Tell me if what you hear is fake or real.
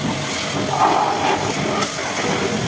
real